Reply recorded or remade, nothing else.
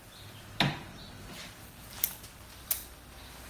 remade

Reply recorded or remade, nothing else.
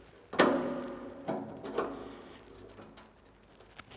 recorded